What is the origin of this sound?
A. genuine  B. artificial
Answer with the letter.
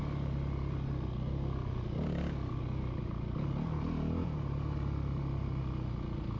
A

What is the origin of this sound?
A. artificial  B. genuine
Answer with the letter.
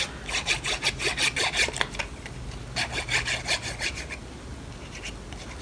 B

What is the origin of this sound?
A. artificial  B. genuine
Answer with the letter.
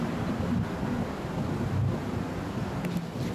B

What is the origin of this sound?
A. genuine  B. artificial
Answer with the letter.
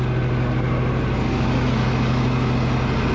A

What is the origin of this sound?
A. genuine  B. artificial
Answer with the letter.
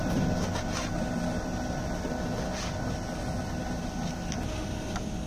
A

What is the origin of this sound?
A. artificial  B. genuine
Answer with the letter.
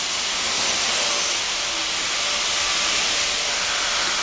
B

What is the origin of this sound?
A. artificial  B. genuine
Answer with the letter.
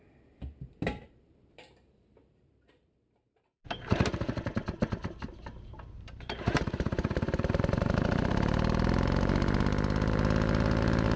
A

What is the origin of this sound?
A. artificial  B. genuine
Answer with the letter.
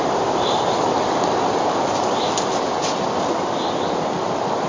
B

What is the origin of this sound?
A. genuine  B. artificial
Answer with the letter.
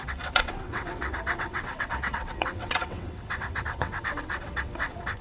B